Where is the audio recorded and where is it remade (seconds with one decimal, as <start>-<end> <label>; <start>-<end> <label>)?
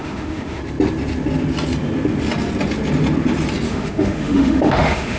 0.0-0.6 remade; 0.6-3.7 recorded; 3.7-5.2 remade